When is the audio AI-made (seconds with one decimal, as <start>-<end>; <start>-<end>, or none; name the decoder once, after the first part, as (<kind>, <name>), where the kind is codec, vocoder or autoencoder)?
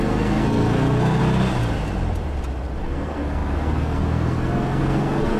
0.0-1.2 (codec, SNAC); 2.8-5.4